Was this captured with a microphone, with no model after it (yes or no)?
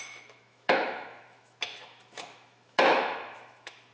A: no